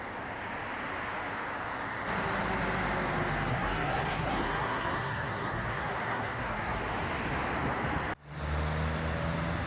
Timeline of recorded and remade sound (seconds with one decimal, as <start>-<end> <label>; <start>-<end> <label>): 0.0-3.5 recorded; 3.5-6.8 remade; 6.8-9.7 recorded

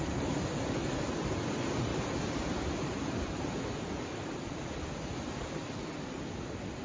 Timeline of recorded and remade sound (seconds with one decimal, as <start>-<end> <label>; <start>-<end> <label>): 0.0-6.8 recorded

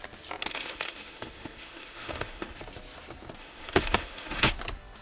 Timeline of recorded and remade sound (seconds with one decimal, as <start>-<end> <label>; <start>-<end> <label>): 0.0-0.5 recorded; 0.5-2.6 remade; 2.6-3.4 recorded; 3.4-4.5 remade; 4.5-5.0 recorded

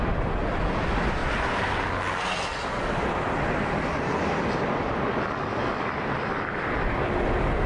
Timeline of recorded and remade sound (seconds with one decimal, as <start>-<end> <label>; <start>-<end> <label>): 0.0-7.7 recorded

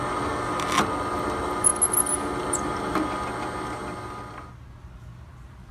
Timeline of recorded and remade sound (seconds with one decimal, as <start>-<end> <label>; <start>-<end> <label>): 0.0-5.7 recorded

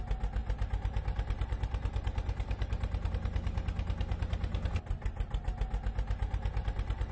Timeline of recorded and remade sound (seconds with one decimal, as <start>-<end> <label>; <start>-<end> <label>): 0.0-0.4 recorded; 0.4-3.1 remade; 3.1-7.1 recorded